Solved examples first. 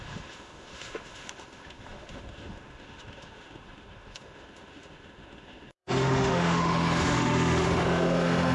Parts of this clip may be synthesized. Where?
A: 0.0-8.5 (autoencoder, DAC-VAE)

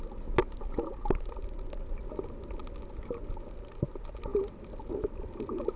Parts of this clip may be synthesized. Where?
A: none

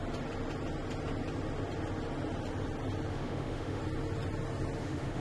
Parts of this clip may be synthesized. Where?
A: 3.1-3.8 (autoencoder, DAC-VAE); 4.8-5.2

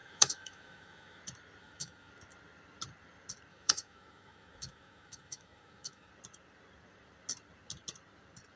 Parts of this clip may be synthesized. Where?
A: 0.0-1.2 (autoencoder, DAC-VAE); 1.6-2.1; 3.5-6.1

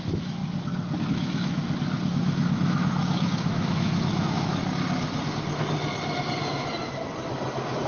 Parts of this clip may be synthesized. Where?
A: 0.0-0.4 (autoencoder, DAC-VAE); 1.1-1.6; 2.1-4.6